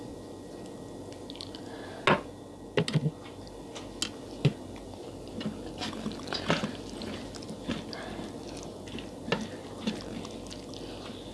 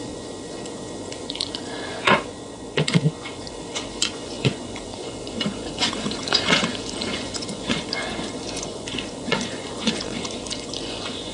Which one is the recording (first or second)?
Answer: first